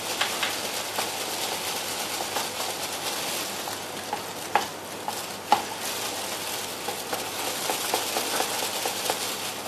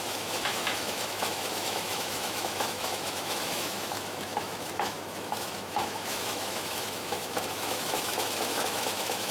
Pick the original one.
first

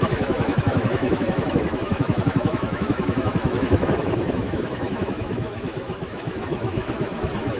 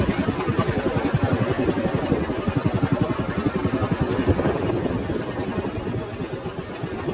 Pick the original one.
second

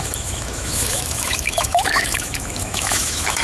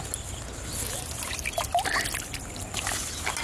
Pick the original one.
second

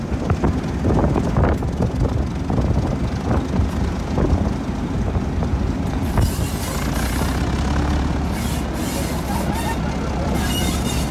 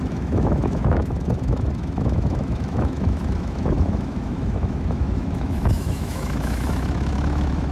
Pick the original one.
first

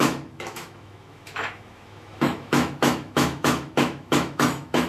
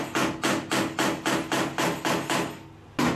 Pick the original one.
second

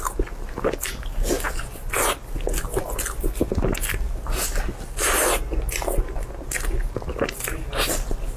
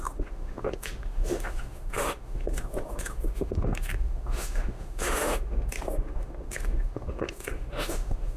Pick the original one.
first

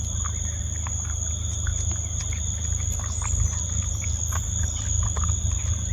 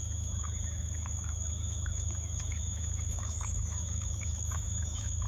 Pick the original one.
first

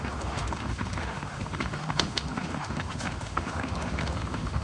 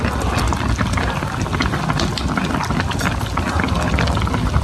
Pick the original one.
second